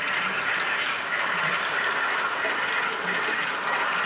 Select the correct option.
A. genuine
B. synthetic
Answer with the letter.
A